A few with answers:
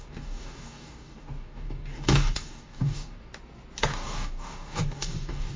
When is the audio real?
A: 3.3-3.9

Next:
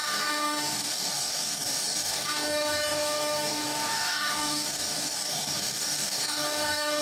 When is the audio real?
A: none

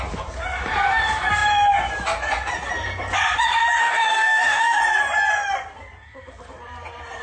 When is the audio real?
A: 0.0-3.8; 4.8-7.2